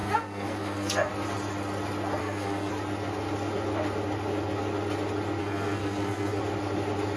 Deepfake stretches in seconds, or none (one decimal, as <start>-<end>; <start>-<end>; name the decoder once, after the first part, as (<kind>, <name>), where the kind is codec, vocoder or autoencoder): 0.0-1.1 (codec, SNAC); 2.2-2.7; 5.4-6.4